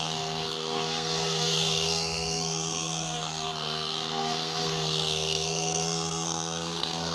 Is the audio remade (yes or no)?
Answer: yes